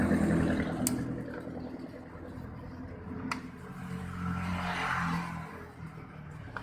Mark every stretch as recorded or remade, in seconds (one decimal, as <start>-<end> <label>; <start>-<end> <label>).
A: 0.0-6.6 recorded